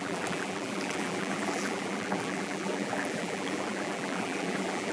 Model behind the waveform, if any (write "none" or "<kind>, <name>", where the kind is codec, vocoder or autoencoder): vocoder, BigVGAN v2